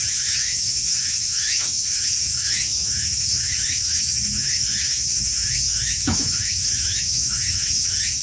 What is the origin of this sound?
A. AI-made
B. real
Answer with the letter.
A